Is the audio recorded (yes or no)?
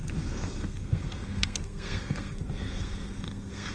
no